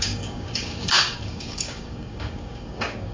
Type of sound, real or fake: fake